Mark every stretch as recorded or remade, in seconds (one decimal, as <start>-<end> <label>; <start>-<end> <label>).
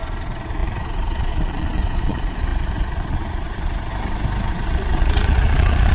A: 0.0-3.9 remade; 3.9-4.5 recorded; 4.5-5.9 remade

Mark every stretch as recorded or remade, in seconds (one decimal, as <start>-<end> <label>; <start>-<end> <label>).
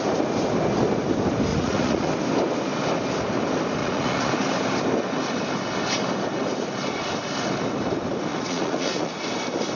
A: 0.0-1.5 recorded; 1.5-2.1 remade; 2.1-3.8 recorded; 3.8-4.3 remade; 4.3-8.3 recorded; 8.3-9.2 remade; 9.2-9.8 recorded